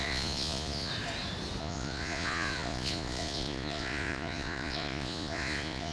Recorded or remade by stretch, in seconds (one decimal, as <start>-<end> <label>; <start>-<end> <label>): 0.0-0.9 remade; 0.9-1.6 recorded; 1.6-5.9 remade